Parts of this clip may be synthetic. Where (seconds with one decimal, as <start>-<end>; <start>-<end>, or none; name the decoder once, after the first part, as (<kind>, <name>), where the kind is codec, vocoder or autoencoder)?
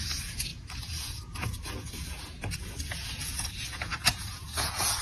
0.0-5.0 (vocoder, Vocos)